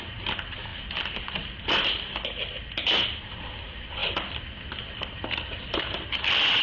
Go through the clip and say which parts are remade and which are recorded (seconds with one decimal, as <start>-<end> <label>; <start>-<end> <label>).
0.0-6.6 recorded